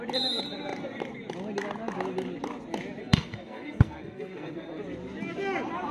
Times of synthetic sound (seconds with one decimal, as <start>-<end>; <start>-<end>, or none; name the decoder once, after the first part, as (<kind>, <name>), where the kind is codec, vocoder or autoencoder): 3.0-4.8 (codec, SNAC)